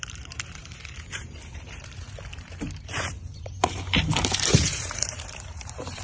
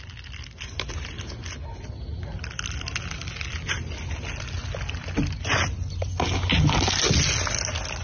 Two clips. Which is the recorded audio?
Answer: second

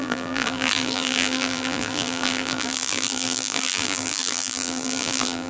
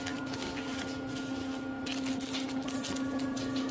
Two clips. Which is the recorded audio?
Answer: second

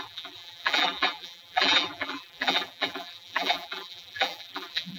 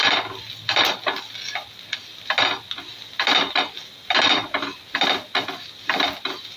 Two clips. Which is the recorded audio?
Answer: second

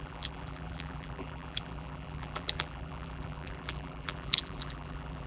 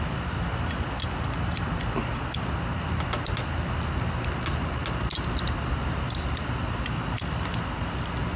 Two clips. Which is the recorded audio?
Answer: second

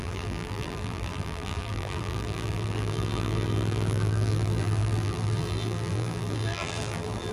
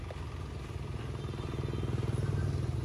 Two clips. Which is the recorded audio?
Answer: second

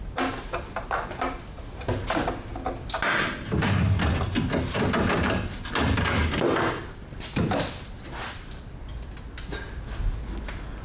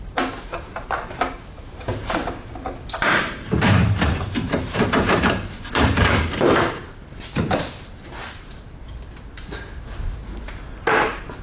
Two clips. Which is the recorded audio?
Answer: first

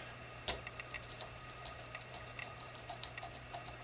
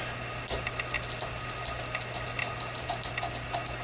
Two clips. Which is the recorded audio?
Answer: second